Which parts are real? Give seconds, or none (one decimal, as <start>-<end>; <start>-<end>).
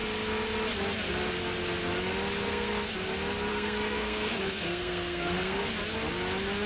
0.0-2.4; 2.9-3.5; 5.6-6.7